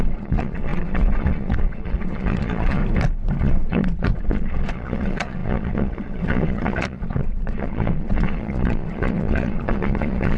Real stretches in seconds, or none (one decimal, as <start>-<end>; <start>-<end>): 2.8-3.4